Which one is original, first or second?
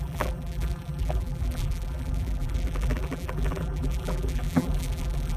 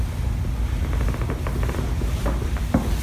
second